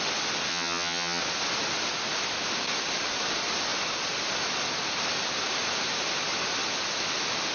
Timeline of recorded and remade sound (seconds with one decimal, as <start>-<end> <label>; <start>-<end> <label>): 0.0-0.5 recorded; 0.5-1.2 remade; 1.2-7.5 recorded